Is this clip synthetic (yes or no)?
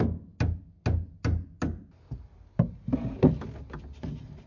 no